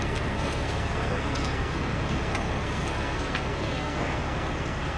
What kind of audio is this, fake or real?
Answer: fake